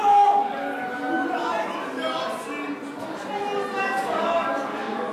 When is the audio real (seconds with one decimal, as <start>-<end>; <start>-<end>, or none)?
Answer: 0.7-3.8